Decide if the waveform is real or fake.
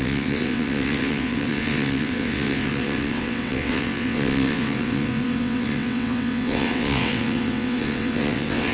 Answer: fake